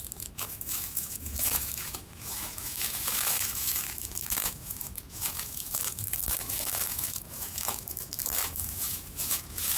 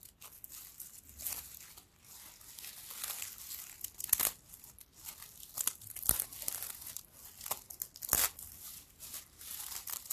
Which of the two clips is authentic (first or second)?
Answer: second